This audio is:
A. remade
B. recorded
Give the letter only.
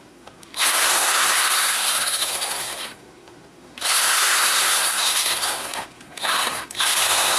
A